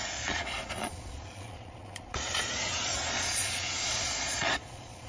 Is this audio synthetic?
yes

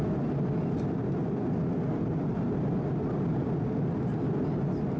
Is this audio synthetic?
no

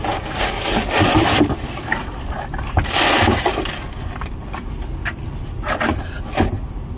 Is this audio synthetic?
no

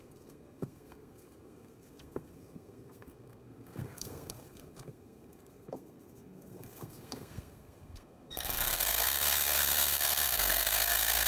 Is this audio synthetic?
yes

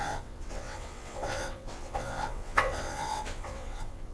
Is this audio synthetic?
yes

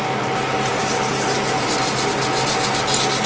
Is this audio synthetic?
no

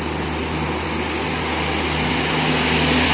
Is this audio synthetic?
no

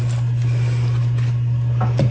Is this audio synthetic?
no